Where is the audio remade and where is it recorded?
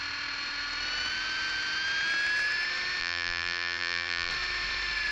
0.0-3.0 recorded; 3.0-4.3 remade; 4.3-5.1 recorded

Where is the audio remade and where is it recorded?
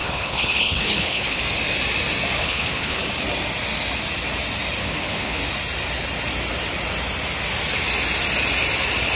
0.0-1.4 remade; 1.4-2.4 recorded; 2.4-3.0 remade; 3.0-4.8 recorded; 4.8-5.4 remade; 5.4-9.2 recorded